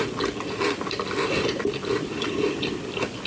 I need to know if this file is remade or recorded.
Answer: recorded